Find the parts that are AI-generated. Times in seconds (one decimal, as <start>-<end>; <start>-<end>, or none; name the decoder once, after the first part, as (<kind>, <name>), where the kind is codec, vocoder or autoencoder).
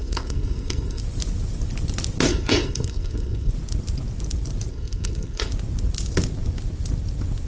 0.0-1.0 (codec, SNAC); 2.3-3.5; 4.7-5.5